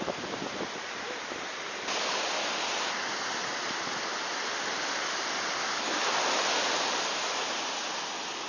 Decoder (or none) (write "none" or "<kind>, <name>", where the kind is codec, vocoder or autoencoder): none